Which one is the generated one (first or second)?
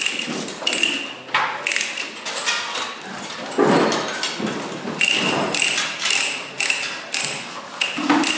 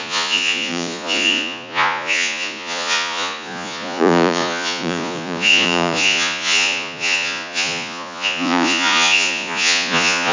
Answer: second